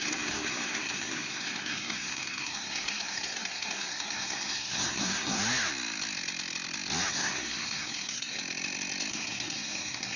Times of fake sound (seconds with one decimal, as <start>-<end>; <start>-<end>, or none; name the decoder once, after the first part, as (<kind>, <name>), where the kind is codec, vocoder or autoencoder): 0.0-5.4 (codec, SNAC); 7.1-8.4; 9.1-10.2

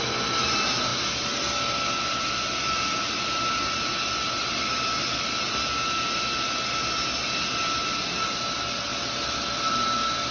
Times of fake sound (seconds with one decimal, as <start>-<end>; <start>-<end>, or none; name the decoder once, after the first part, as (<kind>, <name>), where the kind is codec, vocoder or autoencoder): none

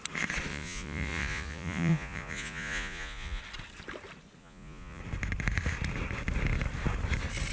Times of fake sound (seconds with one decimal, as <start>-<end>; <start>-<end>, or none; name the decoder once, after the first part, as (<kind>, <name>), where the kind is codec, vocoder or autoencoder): 0.5-3.4 (vocoder, Vocos); 4.4-5.0

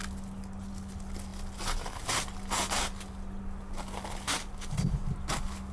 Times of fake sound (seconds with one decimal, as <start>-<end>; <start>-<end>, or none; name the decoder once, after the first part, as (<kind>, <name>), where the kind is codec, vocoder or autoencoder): none

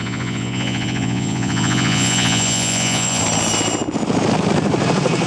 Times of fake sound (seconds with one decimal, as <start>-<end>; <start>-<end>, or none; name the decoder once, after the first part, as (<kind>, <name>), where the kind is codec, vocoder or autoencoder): 0.0-3.2 (vocoder, Vocos)

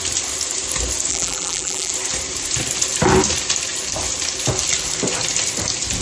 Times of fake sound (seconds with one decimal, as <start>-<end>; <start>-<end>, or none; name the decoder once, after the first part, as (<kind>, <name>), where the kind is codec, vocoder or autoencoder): 1.1-1.9 (vocoder, BigVGAN v2)